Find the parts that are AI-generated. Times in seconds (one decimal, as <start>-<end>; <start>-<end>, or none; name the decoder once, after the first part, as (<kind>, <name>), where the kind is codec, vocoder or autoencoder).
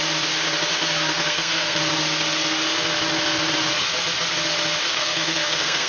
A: 1.2-1.8 (codec, SNAC); 4.9-5.9